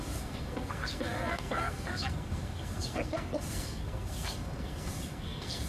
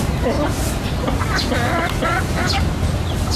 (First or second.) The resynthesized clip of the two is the first